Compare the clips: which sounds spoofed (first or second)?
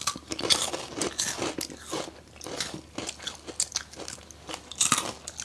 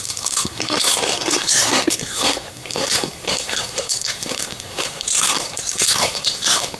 second